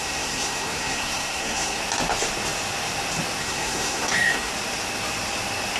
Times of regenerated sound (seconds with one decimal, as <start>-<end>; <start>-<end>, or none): 0.0-1.8; 3.4-4.5